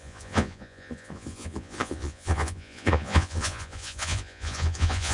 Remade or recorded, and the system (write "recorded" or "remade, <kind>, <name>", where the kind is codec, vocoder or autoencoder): remade, vocoder, Vocos